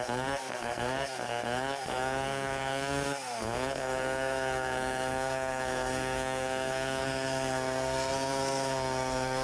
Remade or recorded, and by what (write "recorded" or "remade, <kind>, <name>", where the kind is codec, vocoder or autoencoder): remade, codec, SNAC